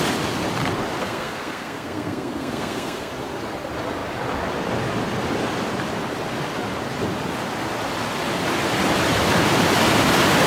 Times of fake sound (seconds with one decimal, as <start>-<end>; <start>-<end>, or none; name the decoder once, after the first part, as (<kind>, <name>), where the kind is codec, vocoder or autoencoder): 1.0-3.1 (codec, SNAC)